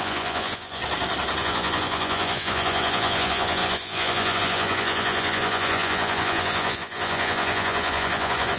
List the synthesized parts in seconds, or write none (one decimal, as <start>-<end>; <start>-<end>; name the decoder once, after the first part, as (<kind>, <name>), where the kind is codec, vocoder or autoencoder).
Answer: 0.0-0.8 (vocoder, Vocos); 1.4-8.6